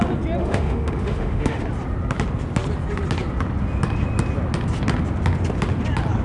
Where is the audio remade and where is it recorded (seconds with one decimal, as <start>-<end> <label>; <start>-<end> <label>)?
0.0-0.4 recorded; 0.4-1.6 remade; 1.6-6.2 recorded